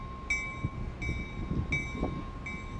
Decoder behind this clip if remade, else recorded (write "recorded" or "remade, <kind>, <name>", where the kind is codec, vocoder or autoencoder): recorded